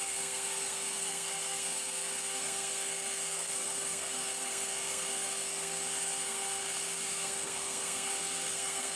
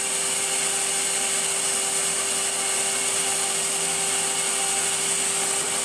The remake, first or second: first